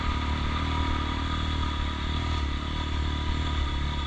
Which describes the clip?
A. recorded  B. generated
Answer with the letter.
A